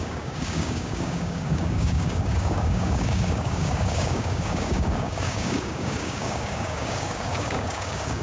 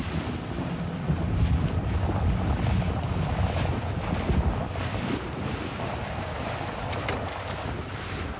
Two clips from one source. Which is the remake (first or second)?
first